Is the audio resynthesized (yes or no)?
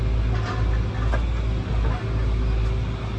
no